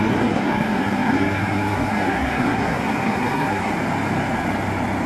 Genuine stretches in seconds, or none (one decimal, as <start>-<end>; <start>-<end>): 3.7-5.1